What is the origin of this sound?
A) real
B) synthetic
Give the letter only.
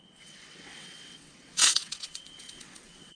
B